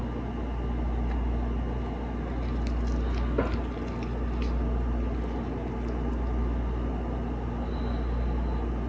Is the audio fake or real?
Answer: real